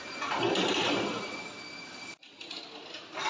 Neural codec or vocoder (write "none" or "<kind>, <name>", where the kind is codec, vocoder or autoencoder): none